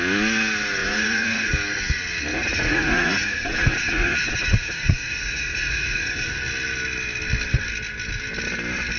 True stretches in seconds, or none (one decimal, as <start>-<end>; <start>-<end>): 0.0-0.8; 1.5-2.3; 6.3-9.0